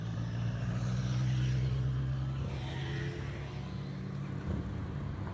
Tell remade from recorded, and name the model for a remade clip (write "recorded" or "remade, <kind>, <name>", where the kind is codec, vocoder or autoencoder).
recorded